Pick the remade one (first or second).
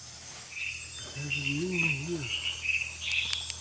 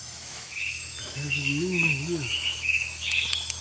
second